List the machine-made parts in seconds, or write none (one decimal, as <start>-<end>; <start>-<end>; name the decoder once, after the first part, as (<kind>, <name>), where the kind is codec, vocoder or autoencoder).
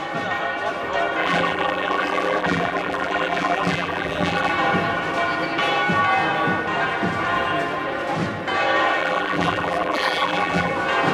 1.2-4.5 (vocoder, BigVGAN v2); 9.0-10.7